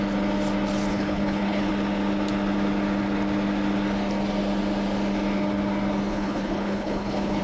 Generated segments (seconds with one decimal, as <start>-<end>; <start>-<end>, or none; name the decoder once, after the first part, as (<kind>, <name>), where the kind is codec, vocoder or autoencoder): 0.9-1.7 (codec, HILCodec); 6.1-7.4